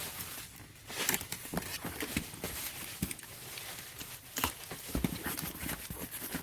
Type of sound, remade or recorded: recorded